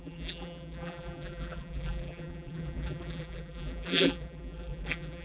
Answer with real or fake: fake